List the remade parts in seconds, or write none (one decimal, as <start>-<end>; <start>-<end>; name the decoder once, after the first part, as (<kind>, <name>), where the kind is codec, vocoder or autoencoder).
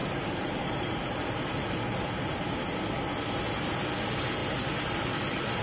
0.0-2.6 (vocoder, BigVGAN v2); 4.4-5.1